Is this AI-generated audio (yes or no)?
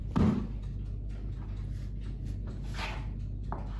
no